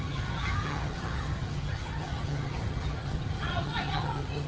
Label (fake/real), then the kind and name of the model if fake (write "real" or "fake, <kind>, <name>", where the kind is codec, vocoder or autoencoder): fake, vocoder, HiFi-GAN